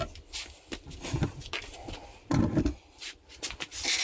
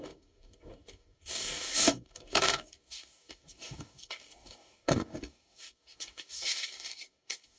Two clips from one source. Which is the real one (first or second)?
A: first